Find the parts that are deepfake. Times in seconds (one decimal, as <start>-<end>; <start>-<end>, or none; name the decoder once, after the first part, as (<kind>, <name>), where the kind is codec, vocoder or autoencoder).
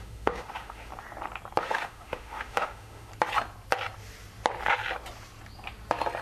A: 0.0-0.9 (autoencoder, DAC-VAE); 1.6-3.1